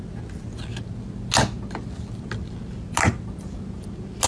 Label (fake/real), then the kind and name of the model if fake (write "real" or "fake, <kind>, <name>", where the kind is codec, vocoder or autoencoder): real